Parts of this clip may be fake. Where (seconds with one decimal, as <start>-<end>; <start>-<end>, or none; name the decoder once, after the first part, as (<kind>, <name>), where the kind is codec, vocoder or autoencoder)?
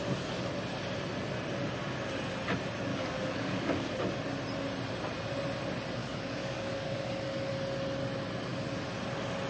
2.9-4.0 (codec, DAC); 6.0-7.5